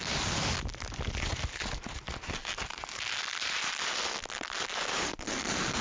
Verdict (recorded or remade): recorded